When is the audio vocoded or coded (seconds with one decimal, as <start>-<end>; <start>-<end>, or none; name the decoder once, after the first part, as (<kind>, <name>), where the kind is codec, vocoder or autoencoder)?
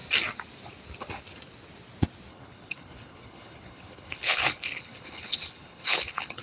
2.3-6.4 (codec, HILCodec)